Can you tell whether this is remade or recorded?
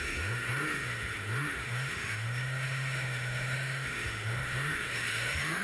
remade